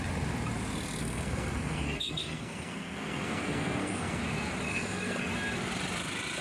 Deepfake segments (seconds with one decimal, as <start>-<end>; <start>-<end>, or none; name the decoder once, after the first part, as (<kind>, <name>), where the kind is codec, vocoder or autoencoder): 1.0-4.2 (codec, SNAC); 4.7-5.3